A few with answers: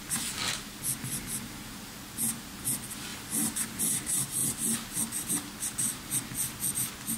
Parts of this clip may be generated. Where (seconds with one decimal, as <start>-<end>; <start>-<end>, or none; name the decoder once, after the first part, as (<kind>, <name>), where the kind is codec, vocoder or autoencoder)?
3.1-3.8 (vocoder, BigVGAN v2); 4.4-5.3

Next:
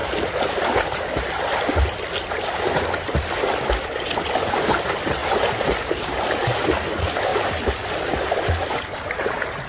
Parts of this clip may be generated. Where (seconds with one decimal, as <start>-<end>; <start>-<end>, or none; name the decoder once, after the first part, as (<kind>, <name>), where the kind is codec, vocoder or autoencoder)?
0.0-4.5 (vocoder, BigVGAN v2); 5.2-5.9; 7.3-8.8

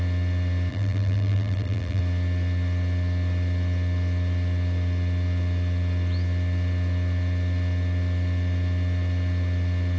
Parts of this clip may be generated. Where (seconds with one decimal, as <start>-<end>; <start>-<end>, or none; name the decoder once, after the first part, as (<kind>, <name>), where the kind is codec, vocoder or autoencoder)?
0.7-2.0 (vocoder, BigVGAN v2)

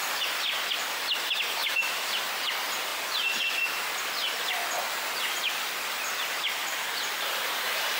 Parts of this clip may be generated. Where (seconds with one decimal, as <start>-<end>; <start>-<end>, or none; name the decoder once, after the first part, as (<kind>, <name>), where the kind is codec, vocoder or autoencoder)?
1.6-2.2 (vocoder, BigVGAN v2); 6.6-8.0